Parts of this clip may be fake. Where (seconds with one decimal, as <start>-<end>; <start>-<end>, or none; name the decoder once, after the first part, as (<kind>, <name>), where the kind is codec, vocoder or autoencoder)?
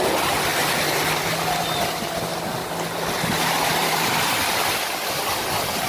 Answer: none